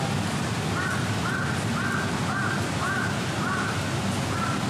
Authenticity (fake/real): real